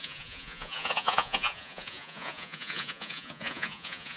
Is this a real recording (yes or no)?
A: no